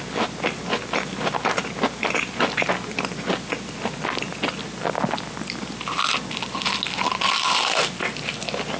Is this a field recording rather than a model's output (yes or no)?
yes